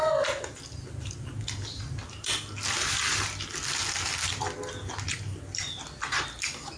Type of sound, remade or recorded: recorded